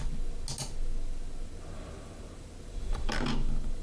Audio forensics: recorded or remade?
recorded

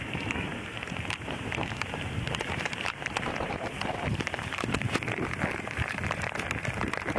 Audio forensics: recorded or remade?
remade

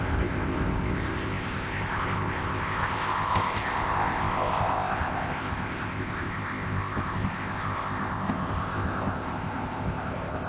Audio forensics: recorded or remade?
remade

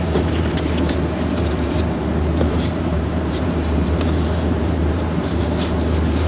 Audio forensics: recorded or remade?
remade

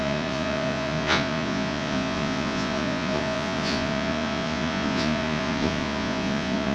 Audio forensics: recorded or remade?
remade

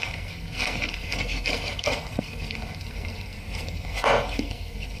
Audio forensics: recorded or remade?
remade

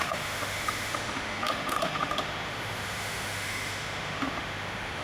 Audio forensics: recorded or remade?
remade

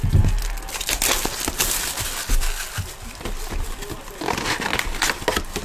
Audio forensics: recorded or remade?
recorded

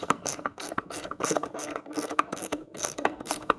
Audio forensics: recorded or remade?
remade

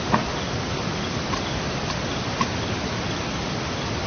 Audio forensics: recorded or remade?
recorded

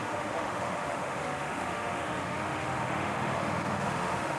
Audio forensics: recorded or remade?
remade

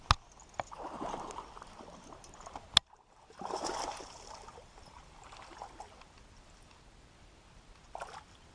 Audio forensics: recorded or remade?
recorded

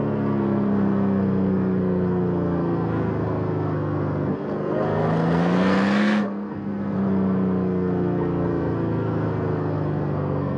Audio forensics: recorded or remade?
remade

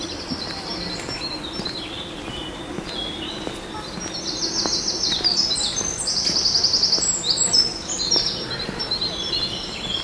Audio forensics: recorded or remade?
recorded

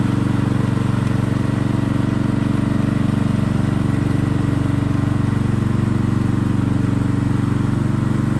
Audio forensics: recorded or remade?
recorded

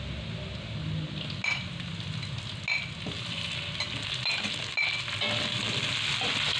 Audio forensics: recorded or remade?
recorded